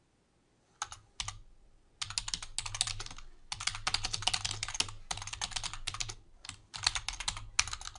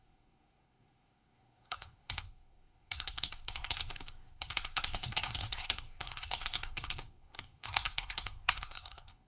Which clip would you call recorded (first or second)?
first